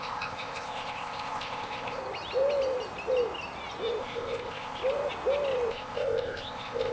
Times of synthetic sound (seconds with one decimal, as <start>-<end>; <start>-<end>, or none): 0.0-2.0; 4.0-4.8; 5.7-6.9